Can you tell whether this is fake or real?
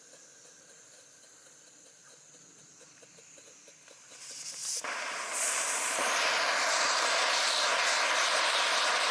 real